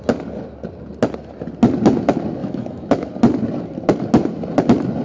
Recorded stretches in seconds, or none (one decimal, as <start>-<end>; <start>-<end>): 0.0-2.4; 3.1-5.0